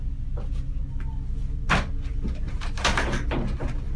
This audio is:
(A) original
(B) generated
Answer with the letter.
A